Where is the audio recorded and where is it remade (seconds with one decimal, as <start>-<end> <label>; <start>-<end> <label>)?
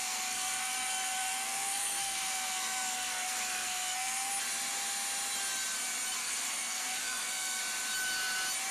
0.0-4.3 remade; 4.3-6.2 recorded; 6.2-7.6 remade; 7.6-8.7 recorded